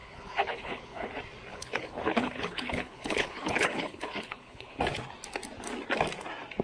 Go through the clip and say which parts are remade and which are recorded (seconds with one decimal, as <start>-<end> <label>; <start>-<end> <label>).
0.0-1.1 remade; 1.1-1.5 recorded; 1.5-4.8 remade; 4.8-6.6 recorded